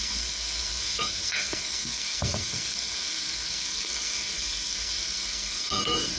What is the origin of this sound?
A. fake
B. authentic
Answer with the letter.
A